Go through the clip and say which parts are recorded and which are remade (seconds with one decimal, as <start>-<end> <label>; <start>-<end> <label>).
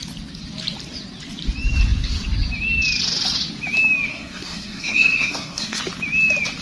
0.0-4.1 recorded; 4.1-5.8 remade; 5.8-6.6 recorded